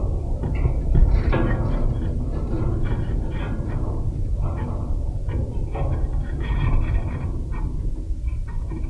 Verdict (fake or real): fake